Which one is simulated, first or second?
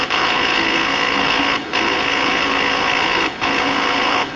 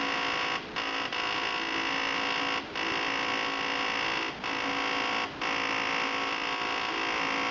first